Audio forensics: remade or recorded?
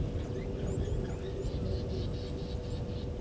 recorded